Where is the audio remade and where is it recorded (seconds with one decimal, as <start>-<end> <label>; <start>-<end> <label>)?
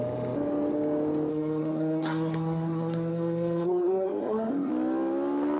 0.0-1.3 recorded; 1.3-4.7 remade; 4.7-5.6 recorded